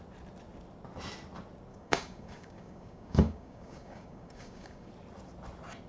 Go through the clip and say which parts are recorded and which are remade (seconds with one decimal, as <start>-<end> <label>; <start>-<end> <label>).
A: 0.0-1.7 recorded; 1.7-4.9 remade; 4.9-5.9 recorded